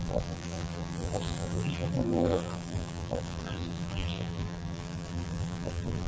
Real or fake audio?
fake